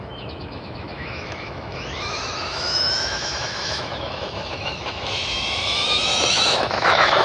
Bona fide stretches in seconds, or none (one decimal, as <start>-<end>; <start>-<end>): none